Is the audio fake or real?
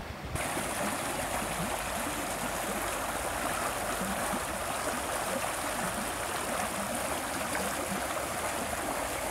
real